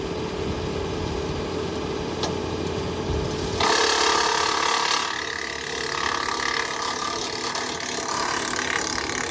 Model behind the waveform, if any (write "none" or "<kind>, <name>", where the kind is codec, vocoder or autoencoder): none